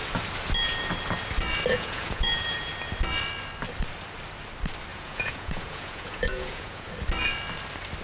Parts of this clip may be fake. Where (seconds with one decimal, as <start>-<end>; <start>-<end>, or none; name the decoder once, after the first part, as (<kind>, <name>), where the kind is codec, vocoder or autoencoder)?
1.7-2.7 (vocoder, Vocos); 4.9-6.9